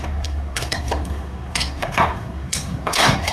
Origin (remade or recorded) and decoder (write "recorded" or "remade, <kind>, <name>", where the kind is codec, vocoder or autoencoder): remade, codec, SNAC